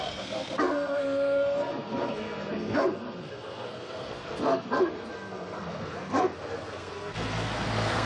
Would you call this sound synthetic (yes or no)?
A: yes